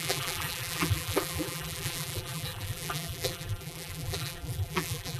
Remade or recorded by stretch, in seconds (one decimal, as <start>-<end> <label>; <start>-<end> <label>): 0.0-5.2 remade